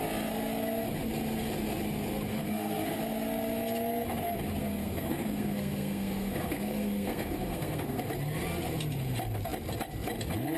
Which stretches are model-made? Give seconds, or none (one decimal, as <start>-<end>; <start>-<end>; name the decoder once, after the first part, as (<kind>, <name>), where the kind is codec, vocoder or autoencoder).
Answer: 2.3-3.0 (codec, SNAC); 4.6-8.0

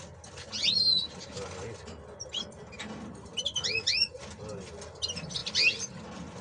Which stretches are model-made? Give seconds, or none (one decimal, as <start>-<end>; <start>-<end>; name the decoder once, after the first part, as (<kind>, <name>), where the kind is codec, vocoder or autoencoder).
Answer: none